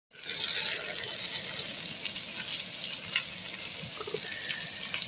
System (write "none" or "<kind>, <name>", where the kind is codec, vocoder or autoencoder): none